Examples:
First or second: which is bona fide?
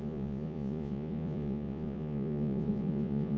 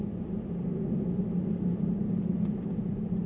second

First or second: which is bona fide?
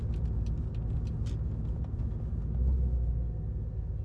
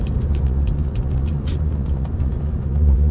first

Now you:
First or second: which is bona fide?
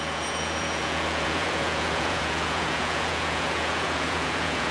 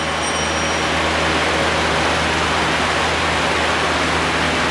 second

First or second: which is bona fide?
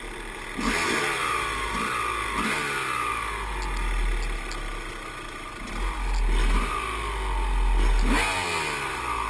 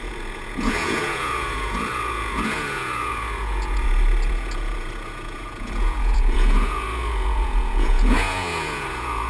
first